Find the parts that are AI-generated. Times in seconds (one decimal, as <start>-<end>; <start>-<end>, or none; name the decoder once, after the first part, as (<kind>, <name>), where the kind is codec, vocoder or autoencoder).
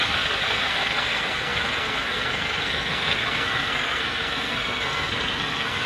0.0-5.9 (codec, SNAC)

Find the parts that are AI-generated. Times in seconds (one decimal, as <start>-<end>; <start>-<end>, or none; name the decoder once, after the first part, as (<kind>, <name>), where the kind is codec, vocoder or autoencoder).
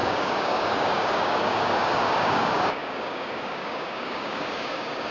0.0-5.1 (codec, DAC)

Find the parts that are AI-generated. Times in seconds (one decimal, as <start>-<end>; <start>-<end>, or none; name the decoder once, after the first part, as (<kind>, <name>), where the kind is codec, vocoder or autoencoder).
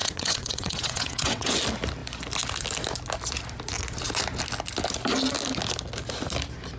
0.0-1.5 (vocoder, WaveNeXt)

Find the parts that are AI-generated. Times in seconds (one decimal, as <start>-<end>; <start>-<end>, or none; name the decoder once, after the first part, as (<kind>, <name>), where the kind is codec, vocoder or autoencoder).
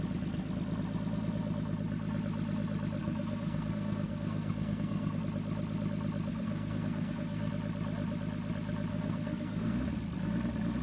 3.0-5.2 (codec, SNAC); 6.3-7.5; 8.9-9.8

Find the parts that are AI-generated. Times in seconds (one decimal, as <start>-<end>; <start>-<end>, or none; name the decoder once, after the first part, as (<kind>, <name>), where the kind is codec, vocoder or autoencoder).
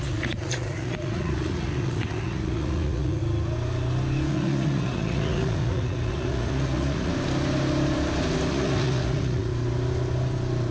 0.0-3.2 (vocoder, Vocos); 4.3-7.1; 8.5-9.5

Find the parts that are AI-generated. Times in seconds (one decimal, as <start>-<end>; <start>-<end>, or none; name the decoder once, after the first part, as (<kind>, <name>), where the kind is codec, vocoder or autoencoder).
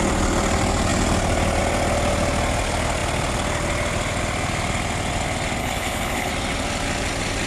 5.6-6.3 (codec, HILCodec)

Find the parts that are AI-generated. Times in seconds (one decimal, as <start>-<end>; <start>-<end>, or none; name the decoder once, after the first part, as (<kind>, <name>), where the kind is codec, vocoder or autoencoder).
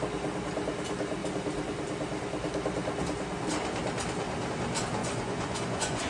5.0-6.1 (vocoder, Vocos)